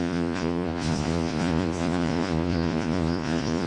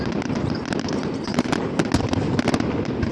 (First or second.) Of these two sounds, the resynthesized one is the first